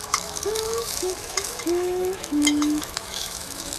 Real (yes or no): no